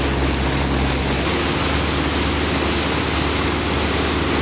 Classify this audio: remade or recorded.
recorded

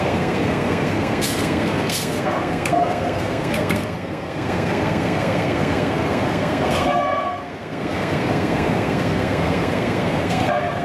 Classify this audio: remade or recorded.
remade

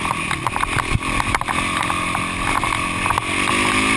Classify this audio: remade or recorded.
recorded